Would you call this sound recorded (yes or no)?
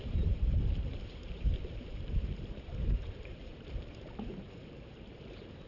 no